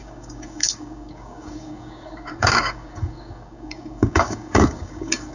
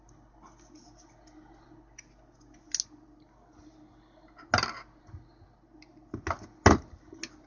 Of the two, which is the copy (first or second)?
first